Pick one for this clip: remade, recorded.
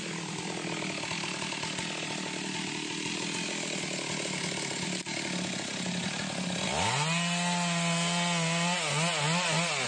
recorded